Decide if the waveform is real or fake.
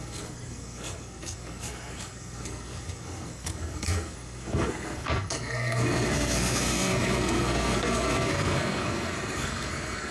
fake